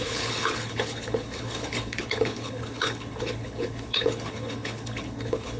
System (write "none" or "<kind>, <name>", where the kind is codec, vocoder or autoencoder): codec, HILCodec